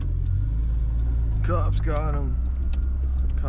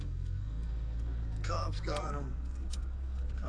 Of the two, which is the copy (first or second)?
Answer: second